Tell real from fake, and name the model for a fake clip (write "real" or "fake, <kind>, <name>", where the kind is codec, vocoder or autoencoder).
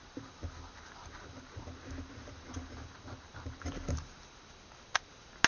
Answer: real